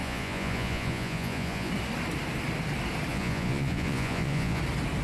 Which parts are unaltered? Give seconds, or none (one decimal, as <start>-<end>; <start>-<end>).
1.7-3.1; 4.6-5.0